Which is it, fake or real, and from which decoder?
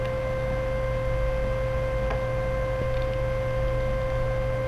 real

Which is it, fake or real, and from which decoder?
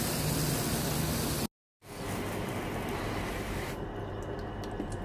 real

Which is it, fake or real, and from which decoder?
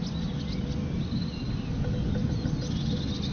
real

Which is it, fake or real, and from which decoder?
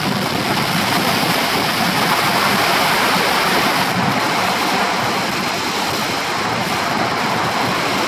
real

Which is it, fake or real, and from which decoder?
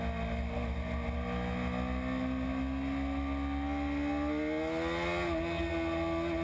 real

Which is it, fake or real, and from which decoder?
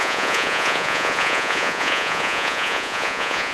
fake, vocoder, Vocos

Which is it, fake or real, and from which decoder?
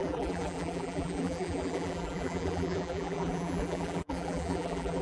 fake, vocoder, BigVGAN v2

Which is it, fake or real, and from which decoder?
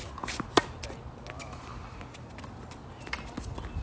real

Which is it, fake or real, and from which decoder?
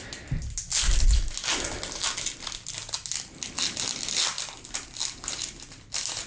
real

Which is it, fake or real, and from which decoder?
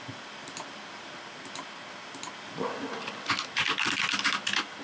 real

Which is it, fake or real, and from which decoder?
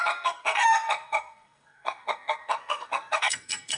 fake, codec, SNAC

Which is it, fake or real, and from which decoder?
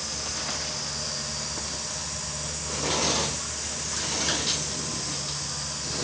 real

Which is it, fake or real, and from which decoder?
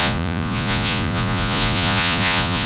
fake, vocoder, Vocos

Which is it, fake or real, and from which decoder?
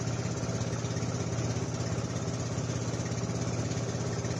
real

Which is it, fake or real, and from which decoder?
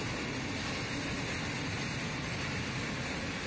real